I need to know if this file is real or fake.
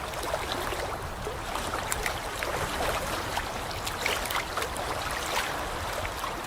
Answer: real